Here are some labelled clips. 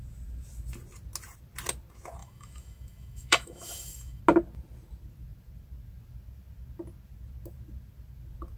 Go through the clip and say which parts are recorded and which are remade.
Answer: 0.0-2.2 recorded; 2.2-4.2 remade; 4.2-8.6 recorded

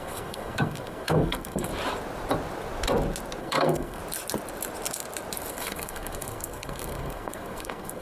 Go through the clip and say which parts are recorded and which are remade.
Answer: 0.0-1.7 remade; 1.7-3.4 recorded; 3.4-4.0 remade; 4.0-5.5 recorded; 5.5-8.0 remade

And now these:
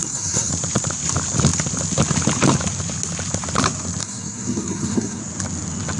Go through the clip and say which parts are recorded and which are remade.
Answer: 0.0-0.5 remade; 0.5-4.0 recorded; 4.0-5.2 remade; 5.2-6.0 recorded

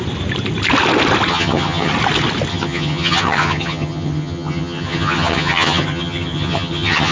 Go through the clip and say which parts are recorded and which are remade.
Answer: 0.0-1.3 recorded; 1.3-1.9 remade; 1.9-2.5 recorded; 2.5-7.1 remade

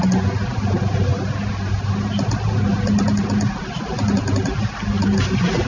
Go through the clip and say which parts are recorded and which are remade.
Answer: 0.0-5.7 recorded

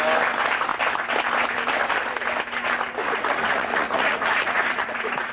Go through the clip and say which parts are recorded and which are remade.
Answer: 0.0-3.0 recorded; 3.0-5.3 remade